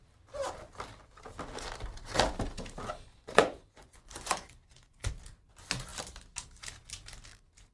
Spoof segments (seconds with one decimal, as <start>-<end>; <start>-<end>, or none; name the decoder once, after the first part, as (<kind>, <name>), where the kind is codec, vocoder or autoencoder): 3.1-5.1 (vocoder, Vocos)